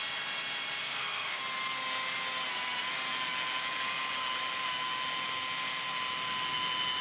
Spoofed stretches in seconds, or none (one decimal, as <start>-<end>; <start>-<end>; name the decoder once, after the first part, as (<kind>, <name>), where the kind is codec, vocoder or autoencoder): 0.8-1.4 (codec, SNAC)